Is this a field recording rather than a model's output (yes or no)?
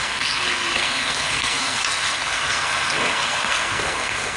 no